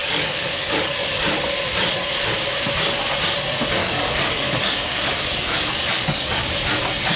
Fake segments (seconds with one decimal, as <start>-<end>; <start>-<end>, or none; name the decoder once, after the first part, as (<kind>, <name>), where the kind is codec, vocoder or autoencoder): 0.0-1.2 (codec, DAC); 3.8-6.6